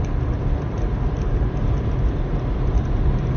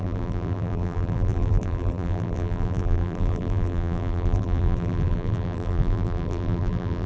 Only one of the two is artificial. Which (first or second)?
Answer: second